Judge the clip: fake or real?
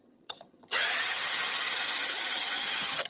fake